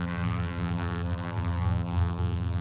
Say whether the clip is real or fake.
fake